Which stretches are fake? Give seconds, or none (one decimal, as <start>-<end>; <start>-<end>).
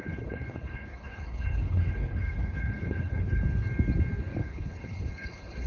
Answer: 0.0-3.4; 4.4-5.7